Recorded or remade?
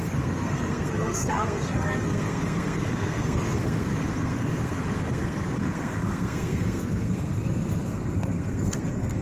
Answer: remade